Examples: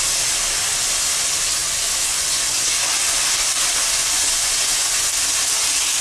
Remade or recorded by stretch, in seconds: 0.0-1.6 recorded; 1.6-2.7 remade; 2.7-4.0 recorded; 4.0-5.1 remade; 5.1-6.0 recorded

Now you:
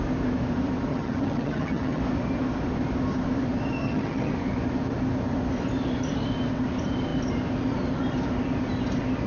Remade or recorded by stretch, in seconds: 0.0-0.9 recorded; 0.9-2.0 remade; 2.0-3.8 recorded; 3.8-4.3 remade; 4.3-9.3 recorded

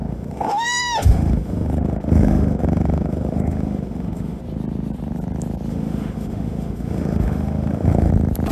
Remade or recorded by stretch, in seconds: 0.0-4.4 remade; 4.4-5.7 recorded; 5.7-8.1 remade; 8.1-8.5 recorded

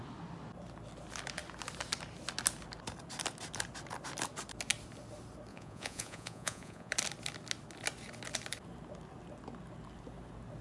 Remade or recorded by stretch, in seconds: 0.0-5.5 recorded; 5.5-6.9 remade; 6.9-10.6 recorded

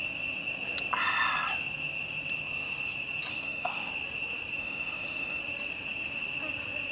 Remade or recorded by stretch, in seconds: 0.0-3.3 recorded; 3.3-3.9 remade; 3.9-4.6 recorded; 4.6-5.4 remade; 5.4-6.9 recorded